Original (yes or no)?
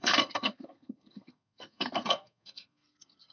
no